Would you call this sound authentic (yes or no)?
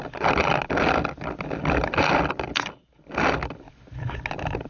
yes